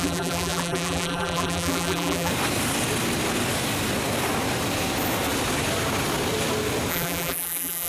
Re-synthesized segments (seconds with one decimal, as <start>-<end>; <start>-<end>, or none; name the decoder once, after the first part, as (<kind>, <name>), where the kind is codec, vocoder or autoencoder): 0.0-2.3 (vocoder, BigVGAN v2); 6.9-7.9